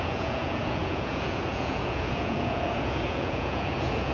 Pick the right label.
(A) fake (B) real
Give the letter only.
A